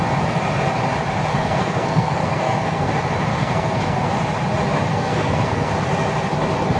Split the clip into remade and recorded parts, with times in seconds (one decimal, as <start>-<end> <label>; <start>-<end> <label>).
0.0-1.3 recorded; 1.3-2.9 remade; 2.9-3.3 recorded; 3.3-4.1 remade; 4.1-4.9 recorded; 4.9-5.7 remade; 5.7-6.8 recorded